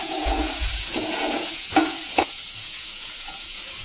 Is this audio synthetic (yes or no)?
yes